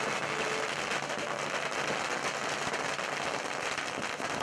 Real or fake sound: real